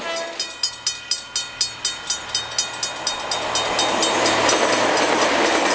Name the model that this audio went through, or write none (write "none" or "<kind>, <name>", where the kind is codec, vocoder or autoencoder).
none